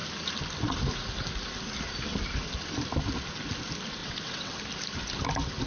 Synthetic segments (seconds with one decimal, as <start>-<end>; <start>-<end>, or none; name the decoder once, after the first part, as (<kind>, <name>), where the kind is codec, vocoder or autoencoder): 4.0-4.6 (vocoder, WaveNeXt)